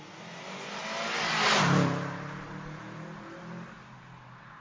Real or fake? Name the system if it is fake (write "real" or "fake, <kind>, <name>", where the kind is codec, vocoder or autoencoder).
real